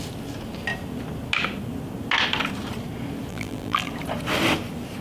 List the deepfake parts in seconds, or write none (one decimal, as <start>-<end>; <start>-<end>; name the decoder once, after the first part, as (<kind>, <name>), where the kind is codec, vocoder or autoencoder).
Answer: 3.3-3.9 (vocoder, BigVGAN v2)